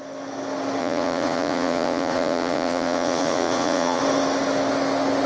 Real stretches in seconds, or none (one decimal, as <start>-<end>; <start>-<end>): 0.0-0.8; 4.0-5.3